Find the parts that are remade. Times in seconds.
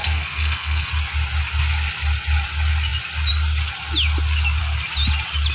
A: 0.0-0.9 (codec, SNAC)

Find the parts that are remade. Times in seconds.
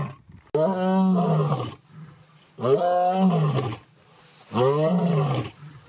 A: none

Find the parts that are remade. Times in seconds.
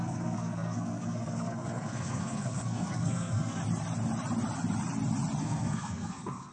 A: 0.0-3.6 (codec, SNAC); 5.4-6.5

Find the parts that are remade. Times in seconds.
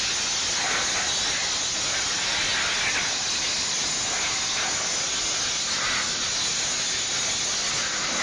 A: none